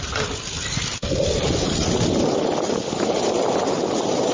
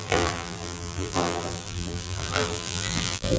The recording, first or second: first